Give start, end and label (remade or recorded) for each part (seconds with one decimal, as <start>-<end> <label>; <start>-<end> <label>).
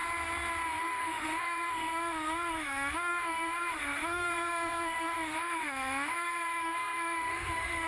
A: 0.0-0.8 recorded; 0.8-7.9 remade